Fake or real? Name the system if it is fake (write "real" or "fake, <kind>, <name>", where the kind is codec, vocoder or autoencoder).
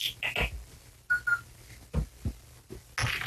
real